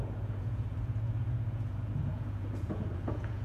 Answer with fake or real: fake